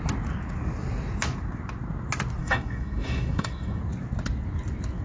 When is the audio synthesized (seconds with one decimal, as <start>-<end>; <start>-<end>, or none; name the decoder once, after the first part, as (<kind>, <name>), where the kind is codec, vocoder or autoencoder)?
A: 2.4-3.8 (autoencoder, DAC-VAE)